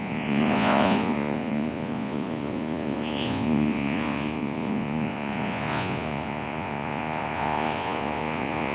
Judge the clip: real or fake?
fake